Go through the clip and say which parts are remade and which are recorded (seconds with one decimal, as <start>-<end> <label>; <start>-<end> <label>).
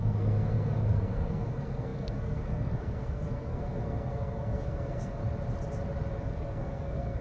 0.0-5.2 remade; 5.2-6.2 recorded; 6.2-7.2 remade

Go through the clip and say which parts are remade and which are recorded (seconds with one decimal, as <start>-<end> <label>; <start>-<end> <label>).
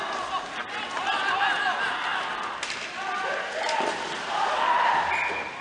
0.0-5.6 recorded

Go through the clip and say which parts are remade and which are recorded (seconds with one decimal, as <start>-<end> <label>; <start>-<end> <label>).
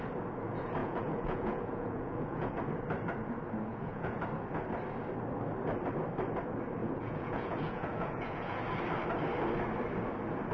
0.0-0.8 recorded; 0.8-2.5 remade; 2.5-3.7 recorded; 3.7-4.2 remade; 4.2-6.8 recorded; 6.8-8.6 remade; 8.6-10.5 recorded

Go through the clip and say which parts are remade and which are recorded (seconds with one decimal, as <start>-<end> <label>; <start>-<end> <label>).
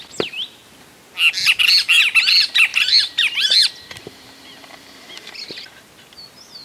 0.0-2.7 recorded; 2.7-5.5 remade; 5.5-6.6 recorded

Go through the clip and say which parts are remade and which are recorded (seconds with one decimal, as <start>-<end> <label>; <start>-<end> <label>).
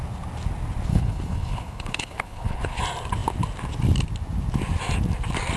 0.0-0.9 recorded; 0.9-2.8 remade; 2.8-5.6 recorded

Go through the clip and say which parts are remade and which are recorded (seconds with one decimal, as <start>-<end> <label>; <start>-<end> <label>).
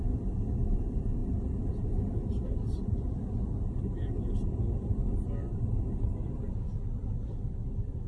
0.0-8.1 remade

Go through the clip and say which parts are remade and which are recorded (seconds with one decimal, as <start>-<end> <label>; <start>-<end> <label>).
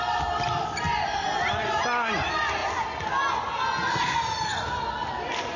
0.0-5.6 recorded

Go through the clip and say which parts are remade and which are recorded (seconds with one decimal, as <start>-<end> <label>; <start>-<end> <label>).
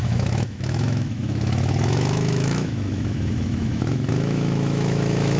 0.0-5.4 remade